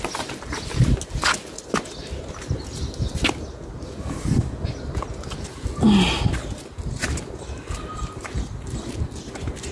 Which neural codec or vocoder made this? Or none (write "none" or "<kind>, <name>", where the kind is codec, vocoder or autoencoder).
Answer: none